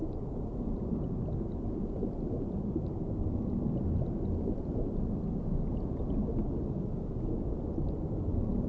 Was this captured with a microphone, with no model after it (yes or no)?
yes